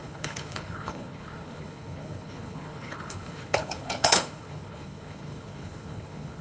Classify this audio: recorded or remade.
remade